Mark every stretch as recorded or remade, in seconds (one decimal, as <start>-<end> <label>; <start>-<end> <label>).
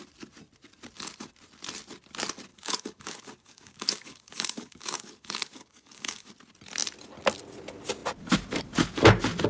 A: 0.0-2.5 recorded; 2.5-6.3 remade; 6.3-9.5 recorded